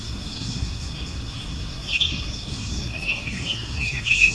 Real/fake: fake